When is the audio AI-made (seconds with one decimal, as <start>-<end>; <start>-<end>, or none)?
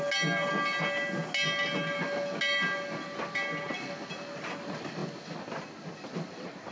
none